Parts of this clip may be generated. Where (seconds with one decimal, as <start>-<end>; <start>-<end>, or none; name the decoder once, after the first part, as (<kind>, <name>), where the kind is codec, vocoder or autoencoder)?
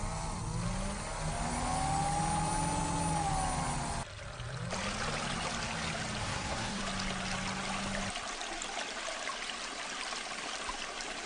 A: 6.2-6.8 (codec, SNAC)